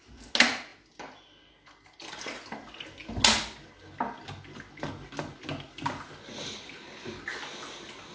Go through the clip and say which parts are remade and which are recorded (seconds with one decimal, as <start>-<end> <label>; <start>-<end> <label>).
0.0-8.1 recorded